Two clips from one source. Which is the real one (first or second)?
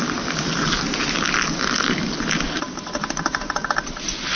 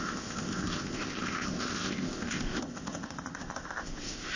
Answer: first